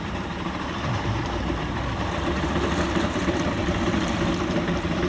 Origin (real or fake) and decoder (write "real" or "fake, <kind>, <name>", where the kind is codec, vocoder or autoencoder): fake, vocoder, BigVGAN v2